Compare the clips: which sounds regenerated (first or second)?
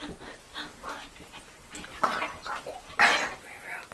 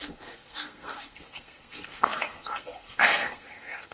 second